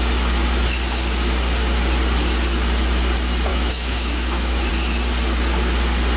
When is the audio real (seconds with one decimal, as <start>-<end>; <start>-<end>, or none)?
0.0-3.5; 4.7-6.2